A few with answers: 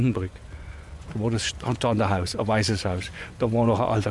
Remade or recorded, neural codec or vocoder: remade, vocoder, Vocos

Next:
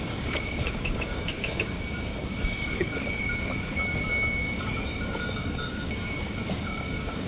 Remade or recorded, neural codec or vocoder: remade, codec, DAC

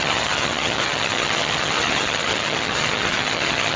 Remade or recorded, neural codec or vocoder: remade, vocoder, HiFi-GAN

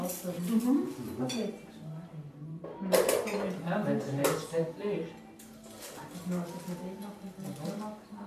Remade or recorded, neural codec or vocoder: recorded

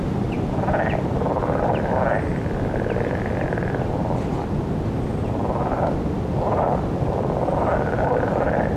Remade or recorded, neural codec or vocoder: recorded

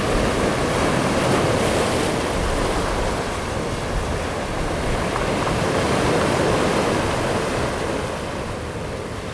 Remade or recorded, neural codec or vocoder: recorded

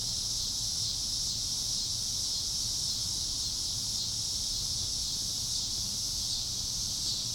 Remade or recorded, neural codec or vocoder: recorded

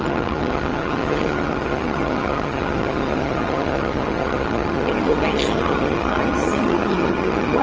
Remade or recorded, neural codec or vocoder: remade, vocoder, HiFi-GAN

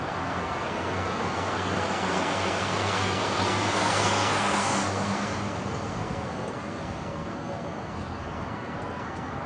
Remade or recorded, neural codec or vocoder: remade, codec, SNAC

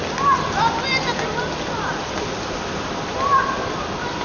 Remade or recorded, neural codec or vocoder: recorded